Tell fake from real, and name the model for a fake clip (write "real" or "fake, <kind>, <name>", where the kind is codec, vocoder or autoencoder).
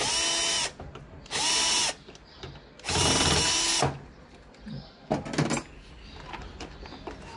real